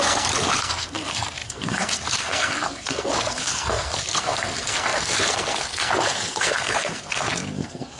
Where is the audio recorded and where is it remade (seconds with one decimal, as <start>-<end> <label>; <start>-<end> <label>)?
0.0-8.0 remade